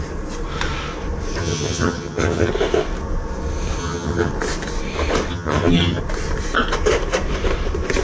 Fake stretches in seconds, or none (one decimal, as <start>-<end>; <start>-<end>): 1.4-2.5; 3.8-4.3; 5.3-6.0